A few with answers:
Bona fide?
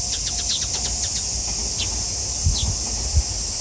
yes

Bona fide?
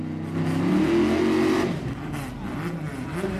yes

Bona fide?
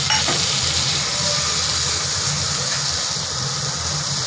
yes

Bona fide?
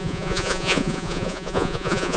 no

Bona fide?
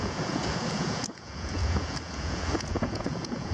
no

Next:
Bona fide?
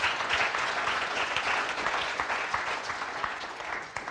no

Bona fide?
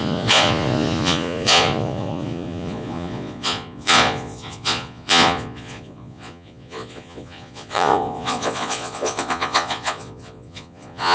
no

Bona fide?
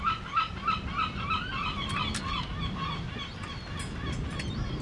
yes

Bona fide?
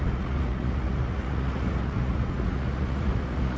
no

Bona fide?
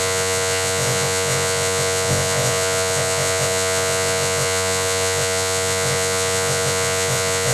no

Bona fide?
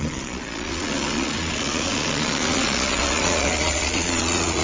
no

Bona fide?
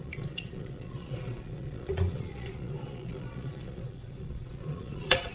no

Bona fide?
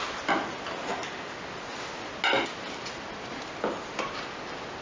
yes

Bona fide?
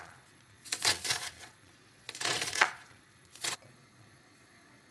no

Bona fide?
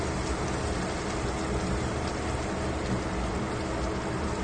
yes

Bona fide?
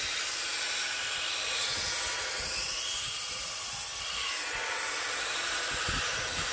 yes